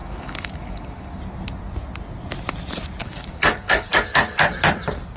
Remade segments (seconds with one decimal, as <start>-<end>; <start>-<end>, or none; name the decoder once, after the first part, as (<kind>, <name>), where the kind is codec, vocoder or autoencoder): 0.0-1.2 (codec, DAC); 3.0-3.9